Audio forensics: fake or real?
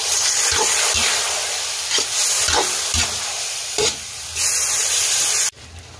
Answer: real